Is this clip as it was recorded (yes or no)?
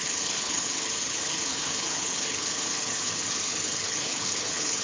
no